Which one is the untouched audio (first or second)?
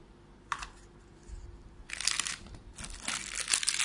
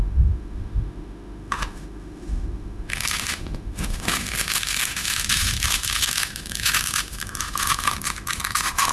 first